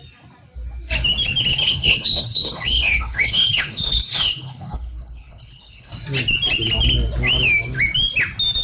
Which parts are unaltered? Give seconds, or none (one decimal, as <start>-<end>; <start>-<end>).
0.0-1.5; 5.9-8.6